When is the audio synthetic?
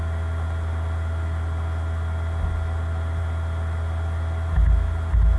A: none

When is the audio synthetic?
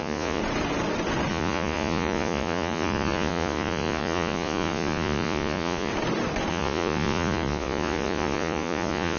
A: 0.0-0.4 (vocoder, Vocos); 1.3-5.9; 6.5-9.2